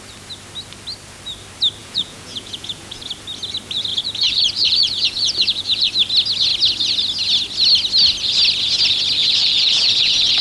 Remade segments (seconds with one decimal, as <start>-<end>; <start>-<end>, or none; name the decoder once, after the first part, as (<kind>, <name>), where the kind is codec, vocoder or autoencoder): 1.8-3.1 (vocoder, Vocos); 3.9-5.9; 9.2-10.4